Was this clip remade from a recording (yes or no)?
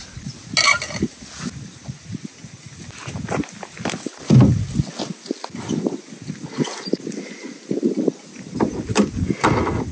no